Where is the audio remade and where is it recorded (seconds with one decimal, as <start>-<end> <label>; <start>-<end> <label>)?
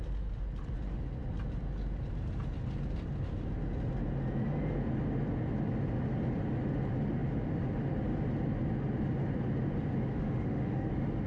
0.0-10.1 recorded; 10.1-10.9 remade; 10.9-11.3 recorded